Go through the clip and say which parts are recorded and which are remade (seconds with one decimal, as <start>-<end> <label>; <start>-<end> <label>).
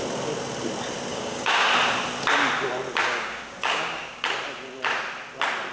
0.0-1.1 recorded; 1.1-1.7 remade; 1.7-3.0 recorded; 3.0-4.2 remade; 4.2-5.7 recorded